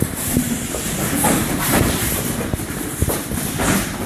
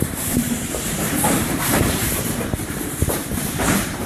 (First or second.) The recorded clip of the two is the first